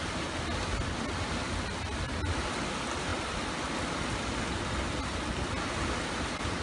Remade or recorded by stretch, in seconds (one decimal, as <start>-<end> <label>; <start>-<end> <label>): 0.0-6.6 recorded